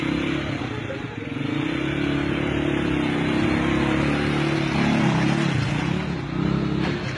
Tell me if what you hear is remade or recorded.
recorded